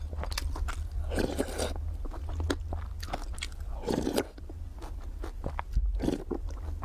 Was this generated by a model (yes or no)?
no